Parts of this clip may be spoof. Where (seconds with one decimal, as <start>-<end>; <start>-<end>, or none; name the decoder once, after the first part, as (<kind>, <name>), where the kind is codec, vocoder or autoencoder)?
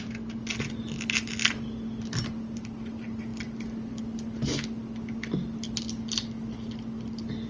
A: none